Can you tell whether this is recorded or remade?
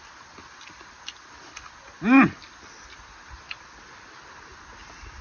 recorded